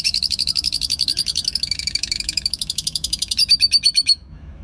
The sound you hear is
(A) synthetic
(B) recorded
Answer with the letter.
A